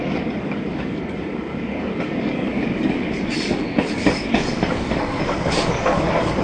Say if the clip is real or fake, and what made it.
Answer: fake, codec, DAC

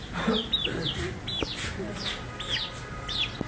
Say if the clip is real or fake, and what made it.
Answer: real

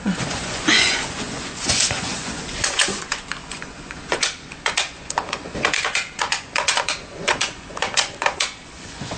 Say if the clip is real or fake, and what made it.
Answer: fake, vocoder, Vocos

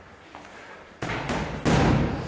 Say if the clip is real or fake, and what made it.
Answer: real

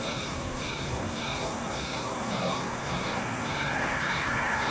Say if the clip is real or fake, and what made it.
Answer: fake, codec, SNAC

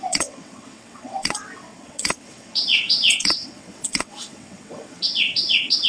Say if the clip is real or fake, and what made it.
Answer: fake, vocoder, WaveNeXt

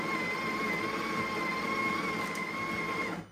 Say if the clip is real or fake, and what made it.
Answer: real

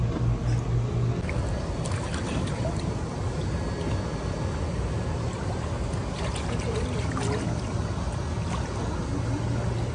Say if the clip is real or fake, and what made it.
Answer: real